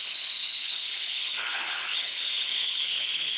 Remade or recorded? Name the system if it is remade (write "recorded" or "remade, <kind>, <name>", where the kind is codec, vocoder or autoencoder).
remade, codec, HILCodec